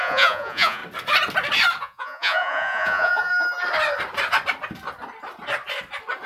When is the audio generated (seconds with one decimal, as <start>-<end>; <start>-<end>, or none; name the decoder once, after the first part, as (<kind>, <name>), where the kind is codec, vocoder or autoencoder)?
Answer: 0.0-0.8 (vocoder, Vocos); 1.8-3.3